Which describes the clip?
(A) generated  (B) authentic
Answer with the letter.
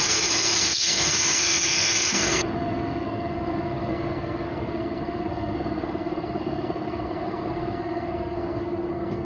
A